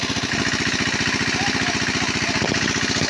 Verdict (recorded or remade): recorded